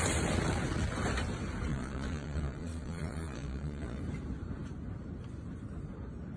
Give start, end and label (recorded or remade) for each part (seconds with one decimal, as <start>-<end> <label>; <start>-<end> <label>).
0.0-1.7 recorded; 1.7-4.0 remade; 4.0-6.4 recorded